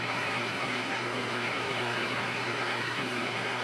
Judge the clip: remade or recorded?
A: remade